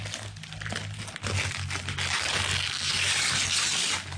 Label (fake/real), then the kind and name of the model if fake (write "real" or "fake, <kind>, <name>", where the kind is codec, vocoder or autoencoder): real